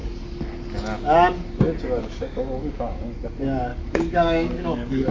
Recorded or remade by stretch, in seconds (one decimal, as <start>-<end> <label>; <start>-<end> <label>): 0.0-0.5 remade; 0.5-2.0 recorded; 2.0-3.2 remade; 3.2-3.7 recorded; 3.7-5.1 remade